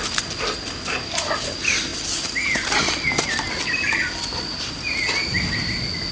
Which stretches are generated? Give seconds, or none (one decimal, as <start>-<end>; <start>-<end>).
1.9-4.4